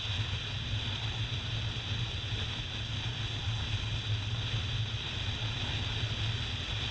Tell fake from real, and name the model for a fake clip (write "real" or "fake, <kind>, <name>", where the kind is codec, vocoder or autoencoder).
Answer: real